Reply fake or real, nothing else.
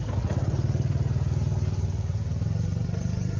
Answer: real